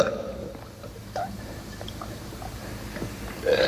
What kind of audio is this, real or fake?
fake